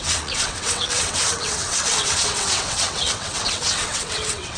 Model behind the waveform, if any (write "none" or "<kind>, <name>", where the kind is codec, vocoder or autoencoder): vocoder, WaveNeXt